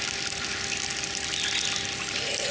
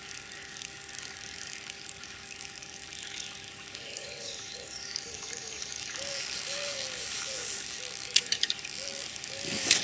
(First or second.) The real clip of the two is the first